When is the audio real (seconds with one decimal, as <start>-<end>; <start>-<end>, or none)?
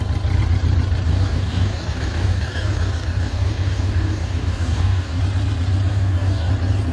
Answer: 0.0-1.1; 5.2-5.9; 6.5-6.9